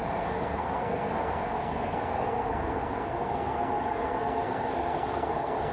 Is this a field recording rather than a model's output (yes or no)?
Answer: no